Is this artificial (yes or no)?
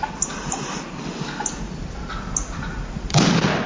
no